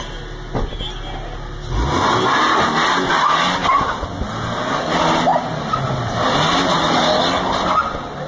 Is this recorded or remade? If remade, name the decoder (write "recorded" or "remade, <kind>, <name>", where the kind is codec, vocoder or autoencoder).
recorded